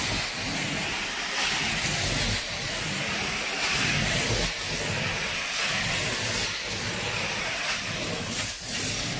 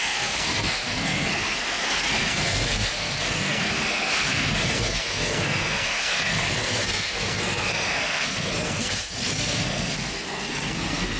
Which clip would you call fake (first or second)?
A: second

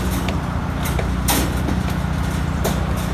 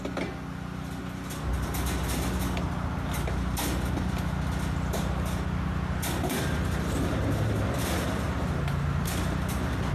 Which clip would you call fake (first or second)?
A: first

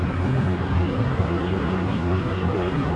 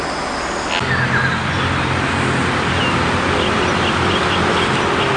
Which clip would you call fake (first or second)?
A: first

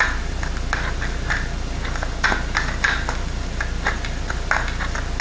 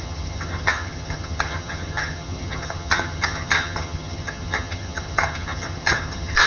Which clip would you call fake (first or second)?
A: second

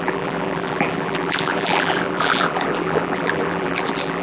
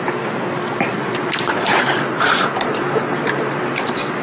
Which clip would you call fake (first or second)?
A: first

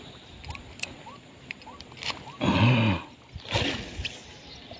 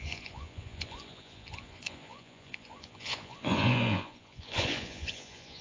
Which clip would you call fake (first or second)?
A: second